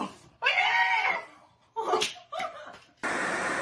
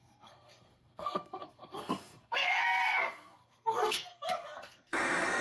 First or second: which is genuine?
first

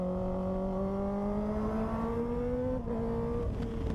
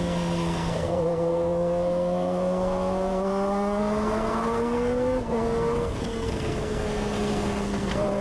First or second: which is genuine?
first